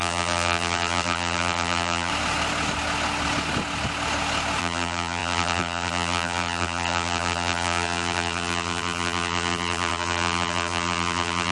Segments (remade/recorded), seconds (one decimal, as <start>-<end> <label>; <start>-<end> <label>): 0.0-2.1 remade; 2.1-4.6 recorded; 4.6-11.5 remade